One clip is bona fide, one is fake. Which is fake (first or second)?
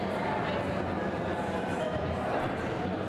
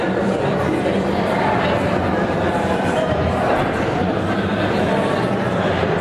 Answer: second